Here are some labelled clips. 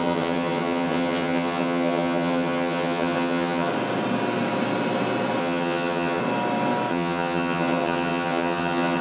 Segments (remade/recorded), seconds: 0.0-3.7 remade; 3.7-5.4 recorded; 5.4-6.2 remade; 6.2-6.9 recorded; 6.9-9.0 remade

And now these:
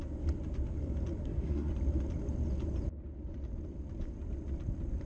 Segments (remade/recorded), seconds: 0.0-1.2 recorded; 1.2-1.7 remade; 1.7-5.1 recorded

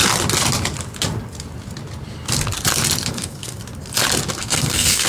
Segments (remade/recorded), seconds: 0.0-3.1 recorded; 3.1-3.6 remade; 3.6-4.4 recorded; 4.4-5.1 remade